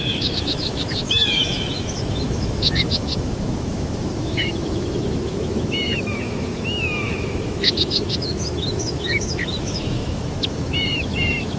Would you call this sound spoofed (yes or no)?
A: yes